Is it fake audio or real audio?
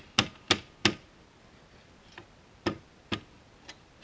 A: real